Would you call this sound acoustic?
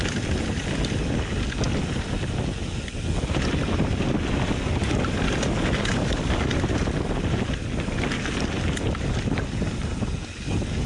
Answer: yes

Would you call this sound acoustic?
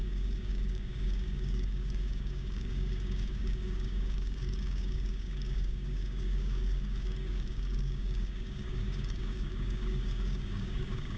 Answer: no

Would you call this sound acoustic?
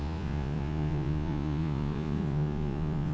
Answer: no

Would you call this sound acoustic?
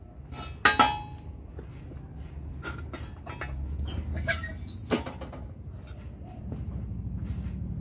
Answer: yes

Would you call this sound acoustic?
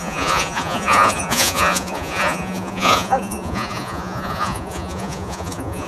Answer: no